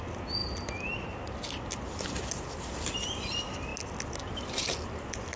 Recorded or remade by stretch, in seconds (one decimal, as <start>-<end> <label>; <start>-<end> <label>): 0.0-5.4 recorded